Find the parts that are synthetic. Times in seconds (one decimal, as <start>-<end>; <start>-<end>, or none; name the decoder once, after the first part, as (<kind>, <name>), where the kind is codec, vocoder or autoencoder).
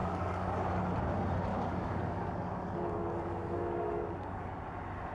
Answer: 0.0-0.8 (codec, DAC); 1.5-4.6